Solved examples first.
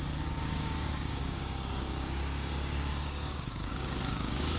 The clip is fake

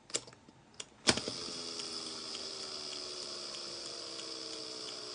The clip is real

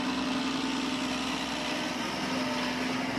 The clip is real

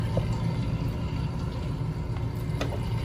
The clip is real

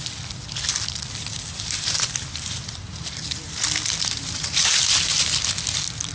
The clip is real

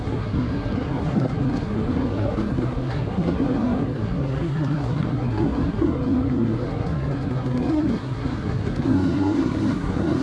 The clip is fake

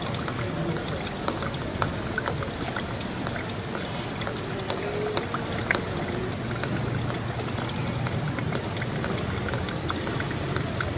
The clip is real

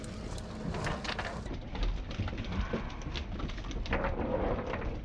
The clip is real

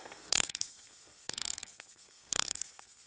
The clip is fake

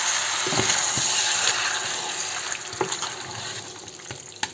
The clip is real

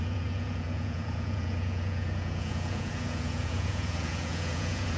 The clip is fake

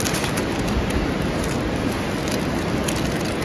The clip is real